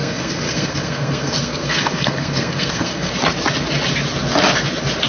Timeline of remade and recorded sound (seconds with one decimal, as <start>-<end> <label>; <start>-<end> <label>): 0.0-3.1 remade; 3.1-5.1 recorded